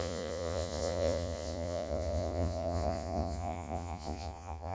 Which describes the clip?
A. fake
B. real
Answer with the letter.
A